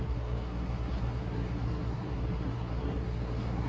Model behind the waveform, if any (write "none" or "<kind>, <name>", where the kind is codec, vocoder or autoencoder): codec, SNAC